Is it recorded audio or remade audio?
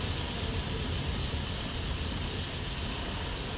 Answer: recorded